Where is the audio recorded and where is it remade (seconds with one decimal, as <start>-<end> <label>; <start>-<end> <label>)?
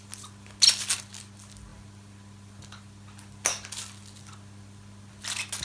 0.0-5.6 recorded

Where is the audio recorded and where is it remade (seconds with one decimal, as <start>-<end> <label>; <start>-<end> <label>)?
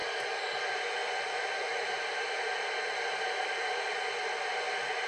0.0-5.1 recorded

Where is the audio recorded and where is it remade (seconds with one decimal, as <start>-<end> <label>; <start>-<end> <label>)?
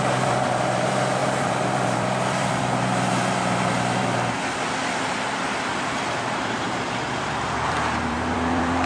0.0-8.9 remade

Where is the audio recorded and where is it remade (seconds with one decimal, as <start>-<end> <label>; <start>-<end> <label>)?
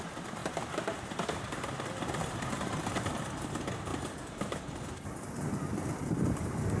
0.0-0.4 recorded; 0.4-3.0 remade; 3.0-3.9 recorded; 3.9-4.6 remade; 4.6-6.8 recorded